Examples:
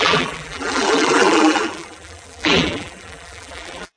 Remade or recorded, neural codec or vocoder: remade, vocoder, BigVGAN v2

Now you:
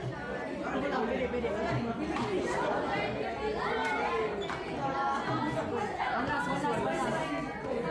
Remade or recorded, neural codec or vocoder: recorded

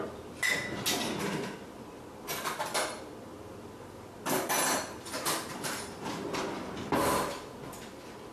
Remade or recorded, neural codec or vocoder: recorded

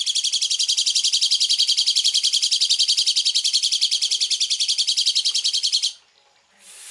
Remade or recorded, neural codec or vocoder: recorded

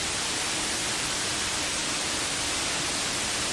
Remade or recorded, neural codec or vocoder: recorded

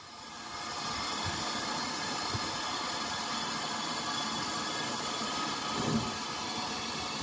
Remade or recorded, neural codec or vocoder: recorded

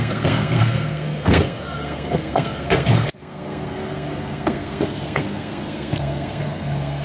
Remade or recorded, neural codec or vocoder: remade, codec, SNAC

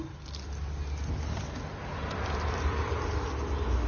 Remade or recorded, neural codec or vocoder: recorded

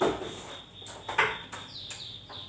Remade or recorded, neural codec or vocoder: recorded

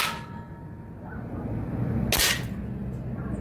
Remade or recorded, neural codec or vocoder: recorded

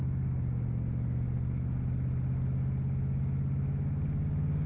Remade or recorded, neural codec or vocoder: recorded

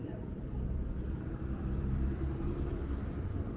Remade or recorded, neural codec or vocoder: remade, vocoder, BigVGAN v2